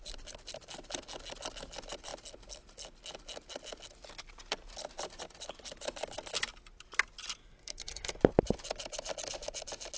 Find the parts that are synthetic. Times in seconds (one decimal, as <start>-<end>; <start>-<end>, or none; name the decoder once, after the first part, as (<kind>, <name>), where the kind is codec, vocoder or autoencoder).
7.4-8.2 (codec, SNAC)